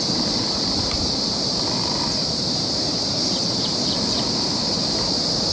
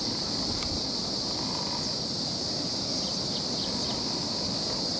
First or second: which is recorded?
second